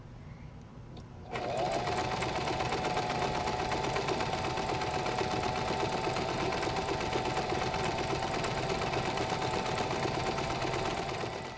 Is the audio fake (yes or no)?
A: yes